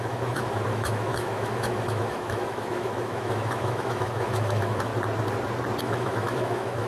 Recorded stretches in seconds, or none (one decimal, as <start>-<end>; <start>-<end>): 4.9-5.8